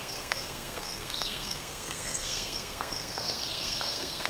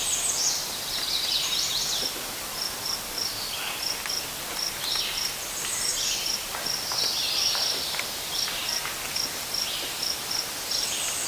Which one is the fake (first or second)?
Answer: first